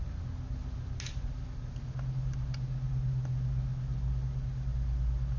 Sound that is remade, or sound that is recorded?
recorded